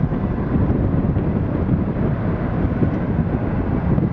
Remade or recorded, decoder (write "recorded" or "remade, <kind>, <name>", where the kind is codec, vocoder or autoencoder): recorded